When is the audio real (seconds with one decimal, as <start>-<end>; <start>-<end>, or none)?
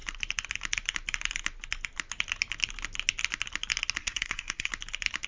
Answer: 0.0-4.0; 4.7-5.3